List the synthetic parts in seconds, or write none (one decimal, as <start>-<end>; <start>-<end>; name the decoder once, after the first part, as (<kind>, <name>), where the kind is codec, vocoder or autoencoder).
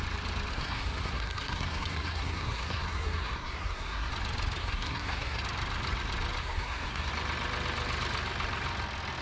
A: 0.5-4.1 (codec, SNAC); 4.6-5.4; 6.4-7.1